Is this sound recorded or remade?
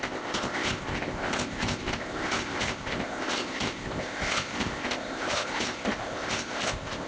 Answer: remade